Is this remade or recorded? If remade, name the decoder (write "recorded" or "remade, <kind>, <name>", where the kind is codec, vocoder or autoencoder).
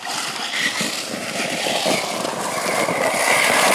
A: recorded